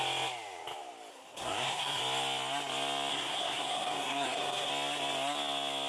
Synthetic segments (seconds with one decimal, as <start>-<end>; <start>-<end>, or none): 1.1-2.0; 3.1-4.7